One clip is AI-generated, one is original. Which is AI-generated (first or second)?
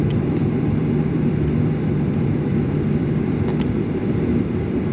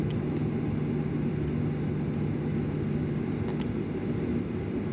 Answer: first